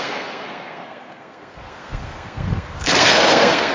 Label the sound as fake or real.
fake